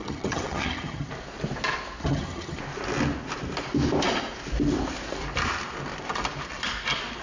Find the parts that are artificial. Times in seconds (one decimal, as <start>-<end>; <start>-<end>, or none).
0.0-1.1; 2.0-2.6

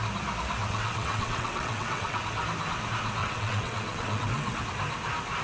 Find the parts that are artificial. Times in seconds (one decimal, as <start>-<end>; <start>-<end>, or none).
0.6-2.2; 3.2-4.6

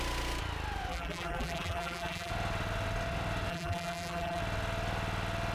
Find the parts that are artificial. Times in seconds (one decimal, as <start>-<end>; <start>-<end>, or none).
0.9-2.3; 3.5-4.4

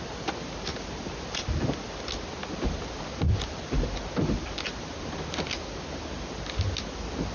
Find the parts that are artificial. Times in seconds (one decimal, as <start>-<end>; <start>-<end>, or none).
none

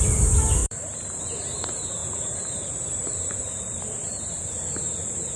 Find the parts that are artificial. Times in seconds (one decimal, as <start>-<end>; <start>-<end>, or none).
0.0-5.4

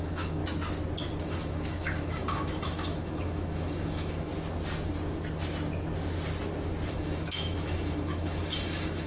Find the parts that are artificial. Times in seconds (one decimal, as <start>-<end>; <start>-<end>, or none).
0.0-0.4; 1.2-4.3; 6.9-9.1

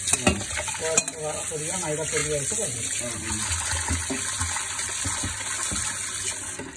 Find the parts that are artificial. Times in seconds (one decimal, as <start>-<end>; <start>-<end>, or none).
none

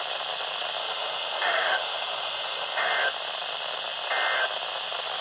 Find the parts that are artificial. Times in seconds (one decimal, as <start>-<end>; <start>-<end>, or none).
0.8-2.9